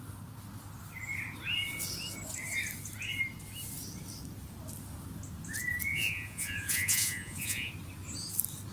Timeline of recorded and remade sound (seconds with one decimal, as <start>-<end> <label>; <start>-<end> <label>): 0.0-5.9 recorded; 5.9-7.7 remade; 7.7-8.7 recorded